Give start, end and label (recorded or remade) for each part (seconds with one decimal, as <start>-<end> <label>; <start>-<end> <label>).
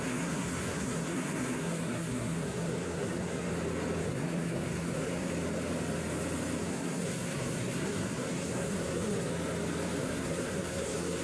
0.0-3.5 remade; 3.5-4.0 recorded; 4.0-5.3 remade; 5.3-6.6 recorded; 6.6-9.3 remade; 9.3-10.0 recorded; 10.0-11.2 remade